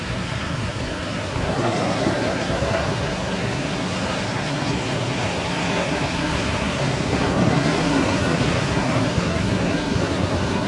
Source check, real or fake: fake